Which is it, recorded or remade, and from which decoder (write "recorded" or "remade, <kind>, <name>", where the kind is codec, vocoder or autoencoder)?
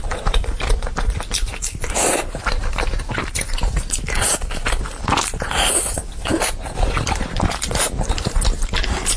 remade, vocoder, BigVGAN v2